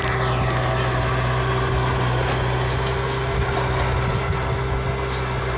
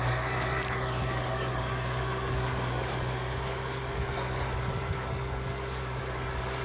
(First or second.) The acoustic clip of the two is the first